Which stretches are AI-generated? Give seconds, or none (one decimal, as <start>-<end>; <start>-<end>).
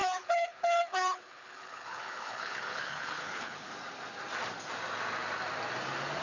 0.0-3.7